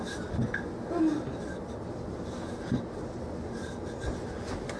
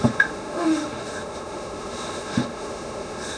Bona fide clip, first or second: first